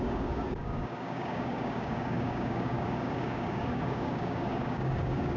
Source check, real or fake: fake